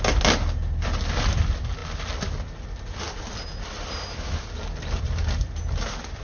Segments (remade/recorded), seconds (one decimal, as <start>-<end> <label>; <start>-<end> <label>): 0.0-6.2 recorded